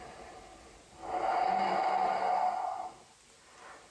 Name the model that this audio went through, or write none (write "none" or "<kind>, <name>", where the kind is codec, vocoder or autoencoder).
none